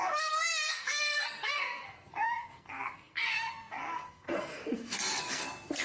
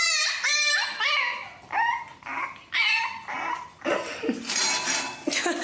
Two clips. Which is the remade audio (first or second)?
first